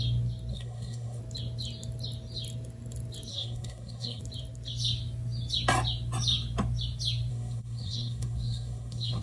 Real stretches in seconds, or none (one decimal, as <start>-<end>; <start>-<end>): 0.0-0.5; 1.2-3.3; 4.2-7.3